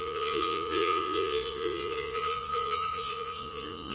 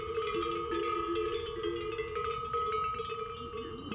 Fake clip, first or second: first